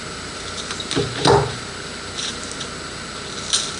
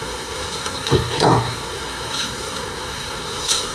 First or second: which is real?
first